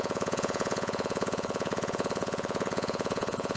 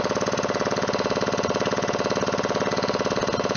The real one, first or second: second